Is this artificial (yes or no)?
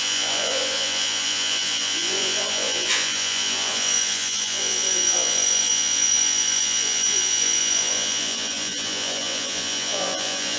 yes